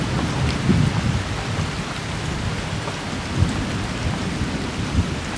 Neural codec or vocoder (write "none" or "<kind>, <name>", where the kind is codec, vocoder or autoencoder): none